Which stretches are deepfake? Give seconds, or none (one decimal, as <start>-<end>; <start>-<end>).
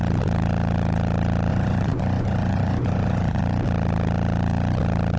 1.5-3.4